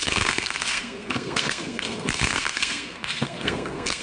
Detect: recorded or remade remade